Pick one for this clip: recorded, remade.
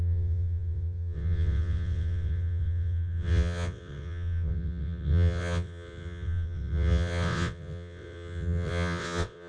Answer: remade